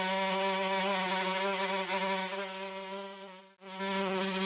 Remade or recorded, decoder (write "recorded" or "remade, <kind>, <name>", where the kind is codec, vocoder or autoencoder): recorded